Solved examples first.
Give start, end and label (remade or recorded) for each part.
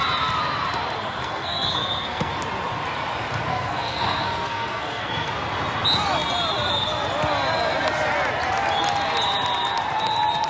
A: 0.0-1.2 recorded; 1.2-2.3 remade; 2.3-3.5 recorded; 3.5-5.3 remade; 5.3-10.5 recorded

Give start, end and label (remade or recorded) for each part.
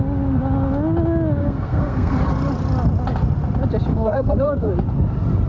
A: 0.0-1.4 recorded; 1.4-2.1 remade; 2.1-3.9 recorded; 3.9-4.7 remade; 4.7-5.5 recorded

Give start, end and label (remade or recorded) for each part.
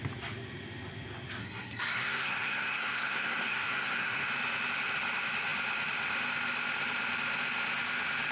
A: 0.0-1.4 recorded; 1.4-4.3 remade; 4.3-8.3 recorded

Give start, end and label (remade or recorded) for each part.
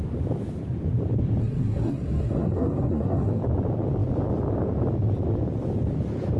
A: 0.0-1.4 recorded; 1.4-3.4 remade; 3.4-6.4 recorded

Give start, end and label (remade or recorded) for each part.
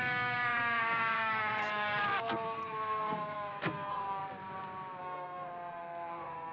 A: 0.0-4.2 remade; 4.2-5.0 recorded; 5.0-6.5 remade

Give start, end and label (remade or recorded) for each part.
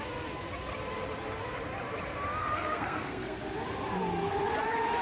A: 0.0-2.4 recorded; 2.4-3.4 remade; 3.4-5.0 recorded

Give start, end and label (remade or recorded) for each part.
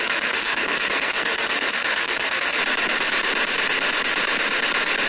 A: 0.0-2.6 remade; 2.6-5.1 recorded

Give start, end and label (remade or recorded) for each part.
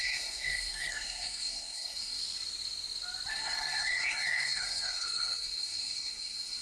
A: 0.0-2.2 remade; 2.2-3.3 recorded; 3.3-6.6 remade